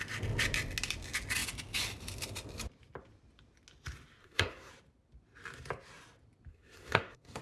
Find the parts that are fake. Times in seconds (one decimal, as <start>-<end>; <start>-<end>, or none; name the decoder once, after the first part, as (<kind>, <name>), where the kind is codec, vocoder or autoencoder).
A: 4.2-4.7 (codec, SNAC); 6.5-7.4